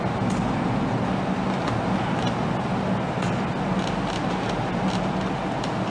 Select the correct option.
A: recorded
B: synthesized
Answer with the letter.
A